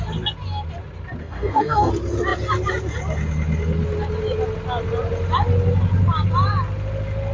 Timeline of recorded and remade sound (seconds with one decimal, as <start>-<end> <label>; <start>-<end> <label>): 0.0-1.2 recorded; 1.2-1.9 remade; 1.9-7.3 recorded